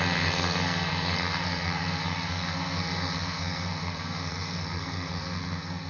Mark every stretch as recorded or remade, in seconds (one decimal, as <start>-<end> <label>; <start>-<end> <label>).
0.0-5.9 remade